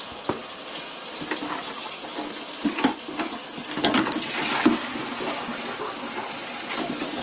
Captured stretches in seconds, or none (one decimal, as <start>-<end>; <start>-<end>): 0.0-7.2

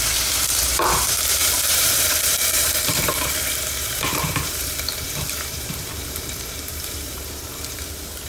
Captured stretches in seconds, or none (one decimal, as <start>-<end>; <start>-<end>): none

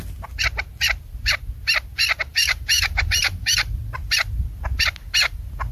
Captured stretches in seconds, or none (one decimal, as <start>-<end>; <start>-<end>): 0.0-2.3; 3.8-5.7

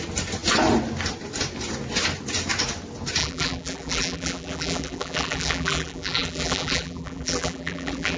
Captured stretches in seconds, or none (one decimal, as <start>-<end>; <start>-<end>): 0.0-3.2

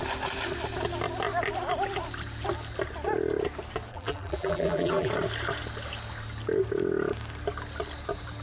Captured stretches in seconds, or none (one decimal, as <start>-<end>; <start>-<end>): 0.0-3.9; 5.1-8.4

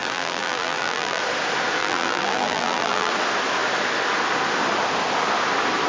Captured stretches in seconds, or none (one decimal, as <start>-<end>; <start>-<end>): 1.2-1.8; 3.1-5.9